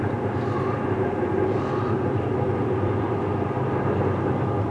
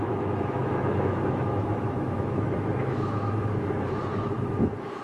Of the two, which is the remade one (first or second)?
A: second